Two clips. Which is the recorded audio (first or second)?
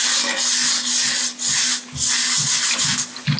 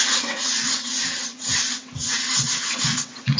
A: first